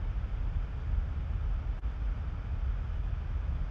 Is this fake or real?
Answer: real